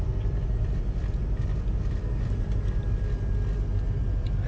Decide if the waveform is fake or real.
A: real